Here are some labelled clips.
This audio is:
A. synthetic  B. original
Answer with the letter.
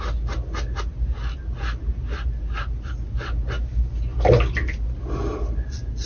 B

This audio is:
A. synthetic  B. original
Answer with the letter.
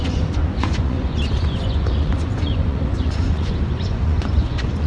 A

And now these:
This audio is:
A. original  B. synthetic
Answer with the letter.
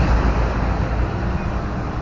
A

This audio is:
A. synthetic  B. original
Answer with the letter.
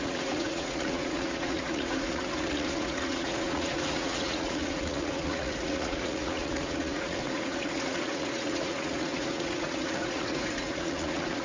A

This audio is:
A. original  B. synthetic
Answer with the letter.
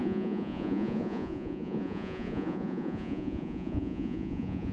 B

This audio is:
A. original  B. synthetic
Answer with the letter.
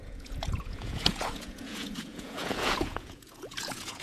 B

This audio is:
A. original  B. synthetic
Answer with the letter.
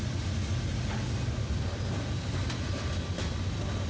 A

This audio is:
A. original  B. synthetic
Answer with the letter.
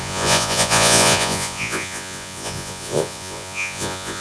B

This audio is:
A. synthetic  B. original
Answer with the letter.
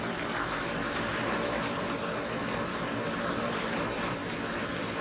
B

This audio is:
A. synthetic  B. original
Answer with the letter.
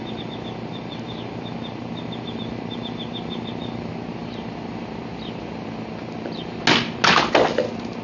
B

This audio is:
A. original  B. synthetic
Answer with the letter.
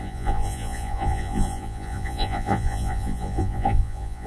B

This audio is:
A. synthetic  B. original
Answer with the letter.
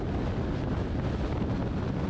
B